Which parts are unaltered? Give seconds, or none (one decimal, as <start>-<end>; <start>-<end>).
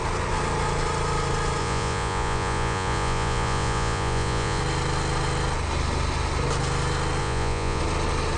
0.0-1.6; 4.6-7.2; 7.8-8.4